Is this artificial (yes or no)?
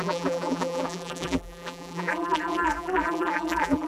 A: yes